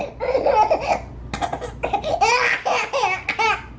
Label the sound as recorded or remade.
recorded